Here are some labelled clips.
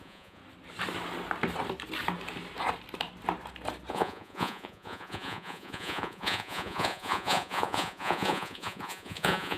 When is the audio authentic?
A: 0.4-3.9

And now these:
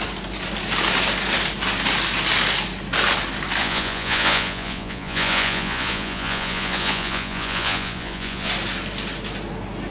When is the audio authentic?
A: 0.0-3.6; 8.5-9.9

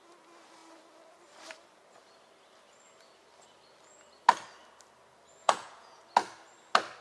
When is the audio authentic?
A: 0.0-5.4; 6.0-7.0

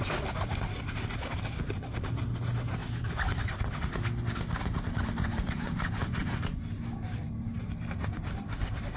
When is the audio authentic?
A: 0.0-5.2; 6.6-9.0

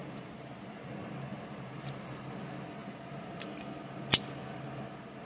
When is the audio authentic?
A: 0.9-1.3; 1.9-2.8; 3.4-5.3

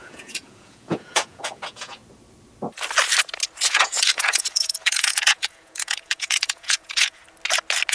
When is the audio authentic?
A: 2.0-3.7; 7.2-7.9

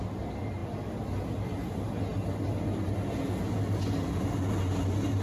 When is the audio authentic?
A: 0.0-5.2

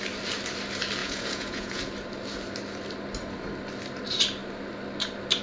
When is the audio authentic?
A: 0.0-1.0; 1.8-5.4